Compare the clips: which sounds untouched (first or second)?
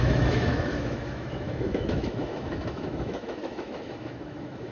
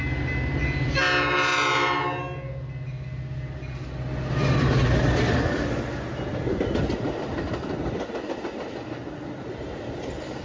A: second